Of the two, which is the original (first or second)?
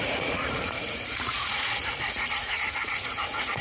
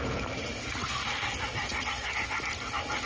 second